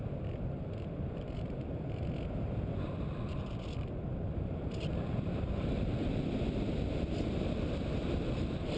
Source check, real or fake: fake